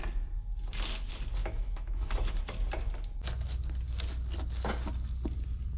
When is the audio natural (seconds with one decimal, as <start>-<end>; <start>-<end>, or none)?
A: 0.0-1.4; 2.4-5.8